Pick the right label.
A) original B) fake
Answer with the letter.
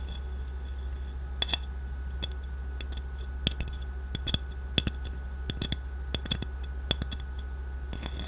A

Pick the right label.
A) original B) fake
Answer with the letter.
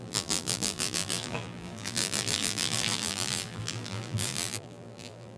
B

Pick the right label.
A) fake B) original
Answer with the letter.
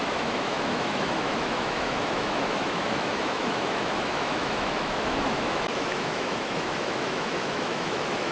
A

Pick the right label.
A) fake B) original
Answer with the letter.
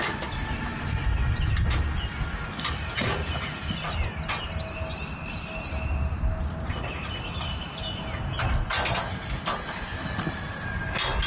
B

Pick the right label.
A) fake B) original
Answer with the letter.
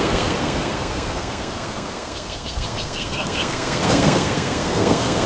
A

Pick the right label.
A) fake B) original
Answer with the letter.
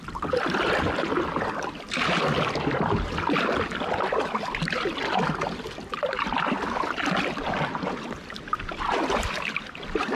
B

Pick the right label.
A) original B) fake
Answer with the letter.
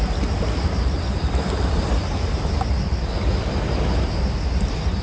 A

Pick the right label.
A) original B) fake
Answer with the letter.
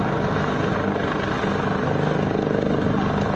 A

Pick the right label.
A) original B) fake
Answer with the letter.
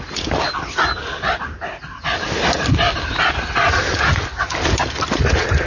A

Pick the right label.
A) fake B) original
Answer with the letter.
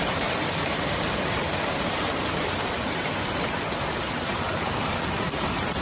A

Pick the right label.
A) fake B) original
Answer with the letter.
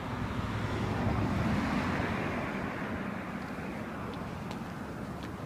B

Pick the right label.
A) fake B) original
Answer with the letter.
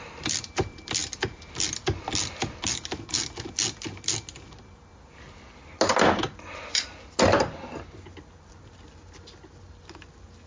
B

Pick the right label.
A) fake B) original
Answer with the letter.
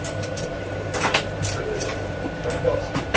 A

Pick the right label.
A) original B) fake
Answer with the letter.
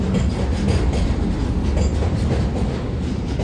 A